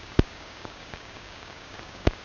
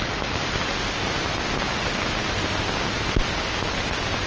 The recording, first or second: second